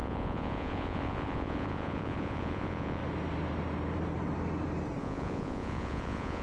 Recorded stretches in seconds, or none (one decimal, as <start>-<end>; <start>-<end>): 3.0-5.0